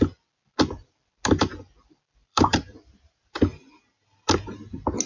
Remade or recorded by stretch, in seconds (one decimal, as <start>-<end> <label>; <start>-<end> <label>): 0.0-2.2 recorded; 2.2-3.4 remade; 3.4-5.1 recorded